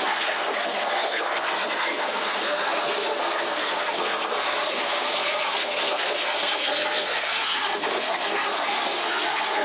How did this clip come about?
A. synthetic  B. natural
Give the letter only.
A